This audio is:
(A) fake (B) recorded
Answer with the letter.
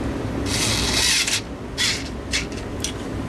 B